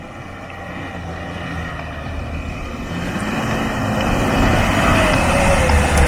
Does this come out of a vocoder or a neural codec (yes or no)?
no